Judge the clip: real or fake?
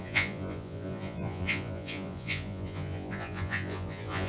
fake